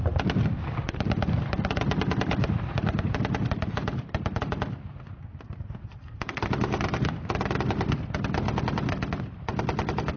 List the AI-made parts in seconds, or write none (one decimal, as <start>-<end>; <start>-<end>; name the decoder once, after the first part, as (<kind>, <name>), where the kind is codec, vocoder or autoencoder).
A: none